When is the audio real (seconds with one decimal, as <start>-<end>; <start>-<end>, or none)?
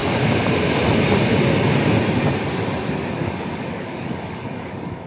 0.0-3.1